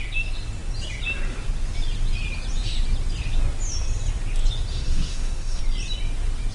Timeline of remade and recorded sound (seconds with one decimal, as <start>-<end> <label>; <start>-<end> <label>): 0.0-4.7 recorded; 4.7-5.6 remade; 5.6-6.5 recorded